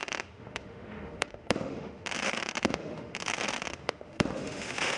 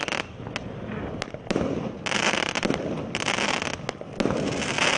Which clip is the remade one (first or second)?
first